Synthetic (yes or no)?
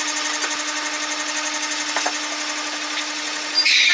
no